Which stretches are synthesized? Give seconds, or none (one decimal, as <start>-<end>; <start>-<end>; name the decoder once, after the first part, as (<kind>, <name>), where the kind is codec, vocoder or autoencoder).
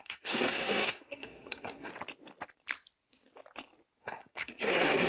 0.0-1.9 (codec, SNAC); 4.0-5.1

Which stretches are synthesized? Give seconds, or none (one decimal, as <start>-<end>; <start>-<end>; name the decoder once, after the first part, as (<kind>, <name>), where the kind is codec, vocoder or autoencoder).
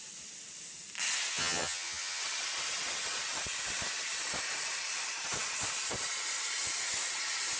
1.3-2.2 (vocoder, HiFi-GAN)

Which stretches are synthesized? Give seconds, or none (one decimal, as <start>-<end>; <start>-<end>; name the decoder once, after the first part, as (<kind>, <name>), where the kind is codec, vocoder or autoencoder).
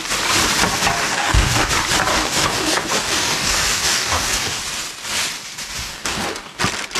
1.0-1.7 (codec, DAC); 2.1-4.6; 5.8-6.6